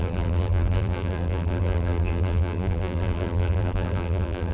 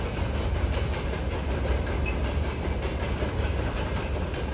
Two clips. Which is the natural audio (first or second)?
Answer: second